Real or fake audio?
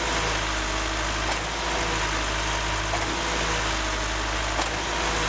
real